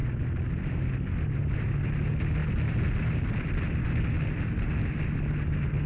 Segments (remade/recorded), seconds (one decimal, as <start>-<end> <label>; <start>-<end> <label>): 0.0-5.9 recorded